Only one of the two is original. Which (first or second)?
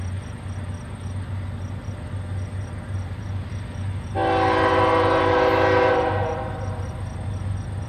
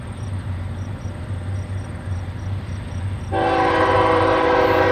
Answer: first